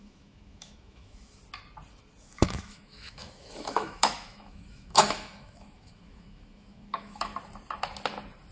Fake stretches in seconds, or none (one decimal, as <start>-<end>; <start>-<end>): 0.0-1.4; 2.2-7.3